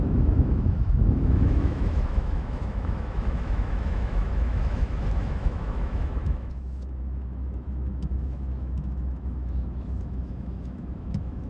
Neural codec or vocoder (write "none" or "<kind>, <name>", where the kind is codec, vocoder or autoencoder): autoencoder, DAC-VAE